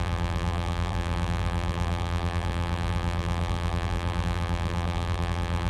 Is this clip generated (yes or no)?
yes